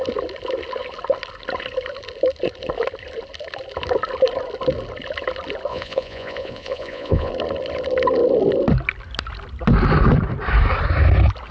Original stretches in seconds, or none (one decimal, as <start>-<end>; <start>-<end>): 0.0-5.7; 7.3-11.5